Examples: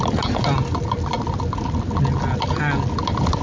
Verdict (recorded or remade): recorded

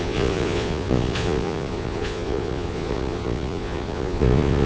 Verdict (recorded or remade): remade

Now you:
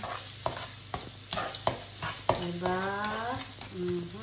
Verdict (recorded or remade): recorded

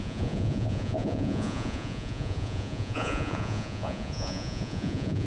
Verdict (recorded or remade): remade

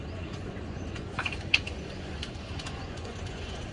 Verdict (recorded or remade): remade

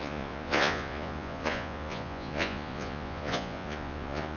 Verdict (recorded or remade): remade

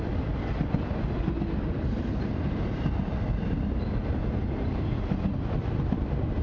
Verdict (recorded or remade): recorded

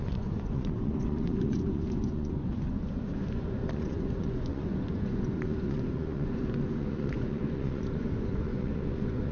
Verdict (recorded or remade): remade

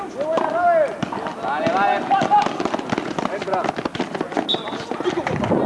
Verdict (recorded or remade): recorded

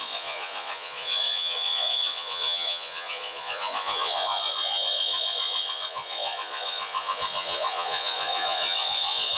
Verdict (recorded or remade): remade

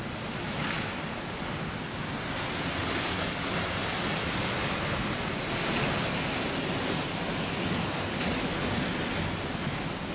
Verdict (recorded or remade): recorded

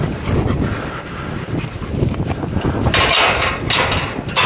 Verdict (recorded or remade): recorded